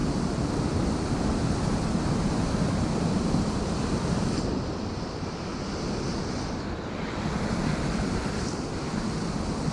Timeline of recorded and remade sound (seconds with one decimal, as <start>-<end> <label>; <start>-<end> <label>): 0.0-0.5 remade; 0.5-9.7 recorded